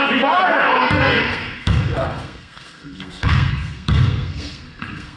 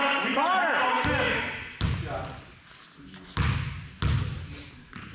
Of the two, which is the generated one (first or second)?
first